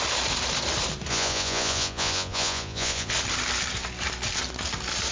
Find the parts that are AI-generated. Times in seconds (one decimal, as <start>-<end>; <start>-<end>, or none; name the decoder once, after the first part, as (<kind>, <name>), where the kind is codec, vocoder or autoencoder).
1.1-3.1 (vocoder, Vocos)